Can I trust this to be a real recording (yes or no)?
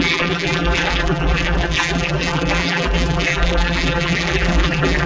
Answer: no